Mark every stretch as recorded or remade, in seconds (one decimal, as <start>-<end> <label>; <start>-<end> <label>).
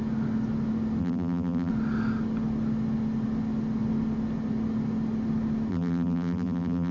0.0-1.0 recorded; 1.0-1.7 remade; 1.7-5.7 recorded; 5.7-6.9 remade